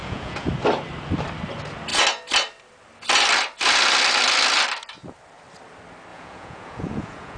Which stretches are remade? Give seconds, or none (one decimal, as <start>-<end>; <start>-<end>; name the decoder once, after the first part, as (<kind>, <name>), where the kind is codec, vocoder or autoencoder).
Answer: 0.0-0.5 (vocoder, Vocos); 6.1-7.4